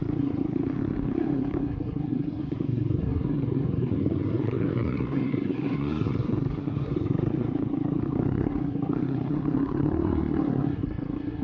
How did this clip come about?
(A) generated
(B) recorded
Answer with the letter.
A